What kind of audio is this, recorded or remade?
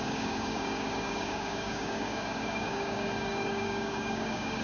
remade